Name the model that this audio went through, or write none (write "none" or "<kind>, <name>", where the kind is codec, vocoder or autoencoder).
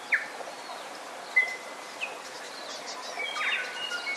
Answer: none